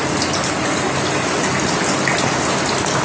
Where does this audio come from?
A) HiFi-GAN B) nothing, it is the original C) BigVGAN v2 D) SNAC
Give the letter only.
B